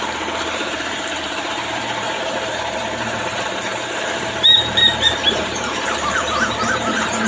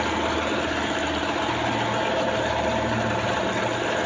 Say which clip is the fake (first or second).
first